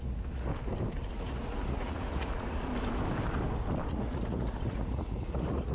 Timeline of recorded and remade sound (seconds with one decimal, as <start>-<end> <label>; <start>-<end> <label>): 0.0-0.5 remade; 0.5-1.1 recorded; 1.1-2.7 remade; 2.7-3.9 recorded; 3.9-5.7 remade